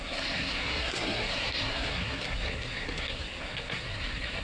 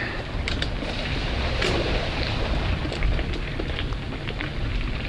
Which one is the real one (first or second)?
second